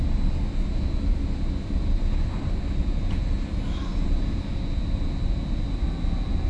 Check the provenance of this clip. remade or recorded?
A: recorded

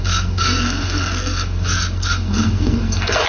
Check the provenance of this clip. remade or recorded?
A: remade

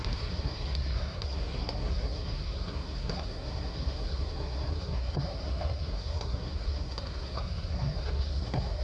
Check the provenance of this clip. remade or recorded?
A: remade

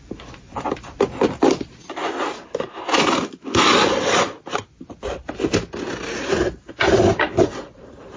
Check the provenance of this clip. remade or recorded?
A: recorded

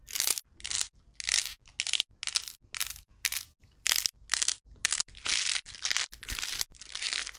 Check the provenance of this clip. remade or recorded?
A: recorded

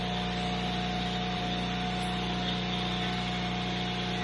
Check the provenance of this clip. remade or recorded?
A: recorded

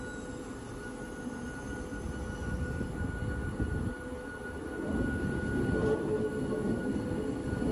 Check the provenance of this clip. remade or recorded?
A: recorded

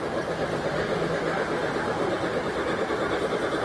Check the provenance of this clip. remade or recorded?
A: recorded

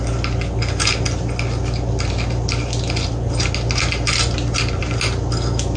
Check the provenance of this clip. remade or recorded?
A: recorded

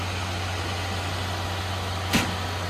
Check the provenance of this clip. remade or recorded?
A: recorded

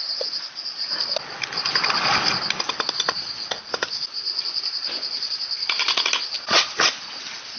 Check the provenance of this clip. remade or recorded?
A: recorded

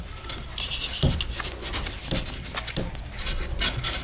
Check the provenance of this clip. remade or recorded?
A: recorded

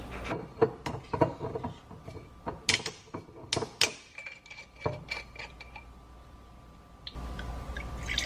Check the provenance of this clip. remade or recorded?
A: recorded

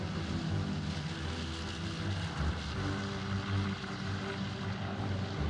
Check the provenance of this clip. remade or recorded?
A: recorded